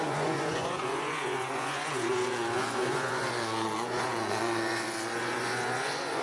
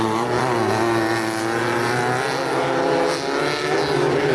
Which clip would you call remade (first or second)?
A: first